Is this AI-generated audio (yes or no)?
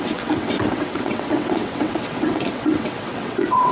yes